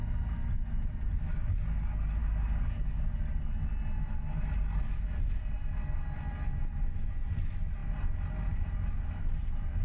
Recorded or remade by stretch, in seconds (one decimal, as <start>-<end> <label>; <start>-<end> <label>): 0.0-9.8 recorded